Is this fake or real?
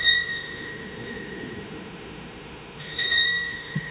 fake